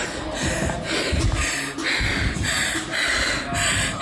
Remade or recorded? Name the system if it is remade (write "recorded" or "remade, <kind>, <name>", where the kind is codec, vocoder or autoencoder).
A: recorded